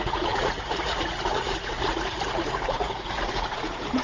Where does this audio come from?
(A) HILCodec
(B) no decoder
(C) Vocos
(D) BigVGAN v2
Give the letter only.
C